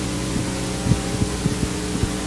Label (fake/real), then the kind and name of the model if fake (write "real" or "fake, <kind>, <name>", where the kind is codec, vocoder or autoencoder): fake, vocoder, Vocos